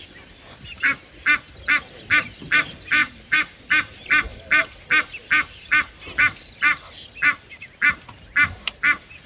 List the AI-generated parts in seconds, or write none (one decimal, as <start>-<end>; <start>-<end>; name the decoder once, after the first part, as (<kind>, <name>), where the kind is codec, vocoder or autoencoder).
3.0-3.6 (vocoder, BigVGAN v2)